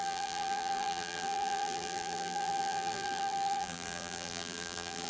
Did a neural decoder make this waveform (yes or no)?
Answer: yes